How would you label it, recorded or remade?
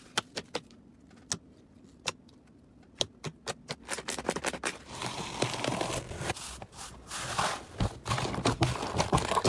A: recorded